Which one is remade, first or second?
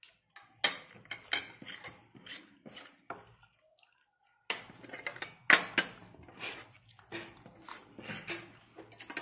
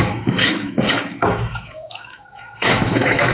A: second